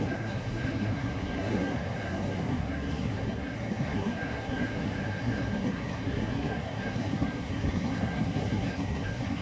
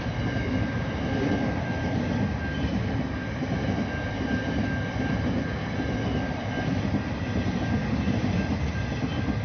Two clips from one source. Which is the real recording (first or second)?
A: second